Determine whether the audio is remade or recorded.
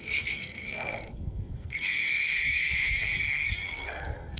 remade